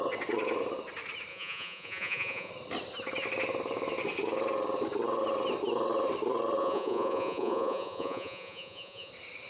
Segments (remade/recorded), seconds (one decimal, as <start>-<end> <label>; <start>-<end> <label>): 0.0-1.3 recorded; 1.3-2.5 remade; 2.5-6.6 recorded; 6.6-9.1 remade; 9.1-9.5 recorded